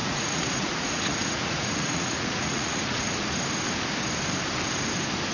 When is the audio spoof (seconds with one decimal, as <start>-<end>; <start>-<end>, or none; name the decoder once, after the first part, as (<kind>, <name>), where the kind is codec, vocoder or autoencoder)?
0.0-3.2 (vocoder, Vocos)